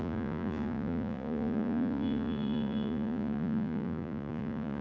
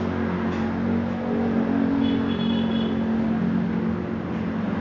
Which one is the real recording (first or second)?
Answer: second